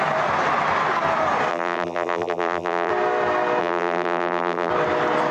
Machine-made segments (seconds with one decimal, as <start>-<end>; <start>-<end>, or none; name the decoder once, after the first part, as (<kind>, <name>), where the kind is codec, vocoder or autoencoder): 1.5-2.9 (vocoder, BigVGAN v2); 3.6-4.7